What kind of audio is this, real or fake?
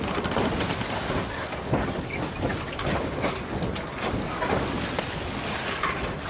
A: real